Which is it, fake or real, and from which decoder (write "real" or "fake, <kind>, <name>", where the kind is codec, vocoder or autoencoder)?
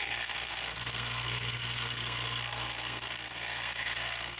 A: fake, codec, SNAC